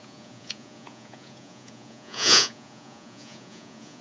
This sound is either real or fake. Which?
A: fake